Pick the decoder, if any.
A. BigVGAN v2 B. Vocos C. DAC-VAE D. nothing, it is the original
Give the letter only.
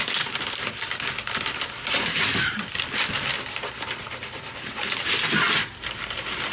D